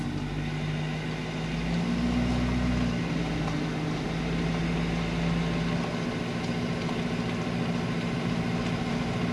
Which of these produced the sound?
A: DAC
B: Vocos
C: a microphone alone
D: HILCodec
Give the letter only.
C